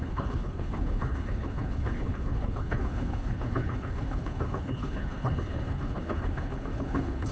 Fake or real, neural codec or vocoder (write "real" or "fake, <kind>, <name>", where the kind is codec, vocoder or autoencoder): fake, codec, HILCodec